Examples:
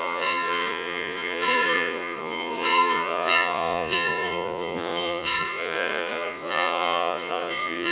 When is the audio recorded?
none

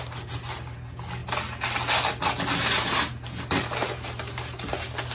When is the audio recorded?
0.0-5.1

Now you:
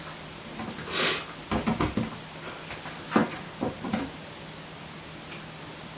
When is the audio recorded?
0.0-6.0